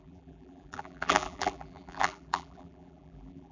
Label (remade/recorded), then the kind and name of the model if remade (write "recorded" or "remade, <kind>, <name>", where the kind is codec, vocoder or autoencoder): remade, vocoder, BigVGAN v2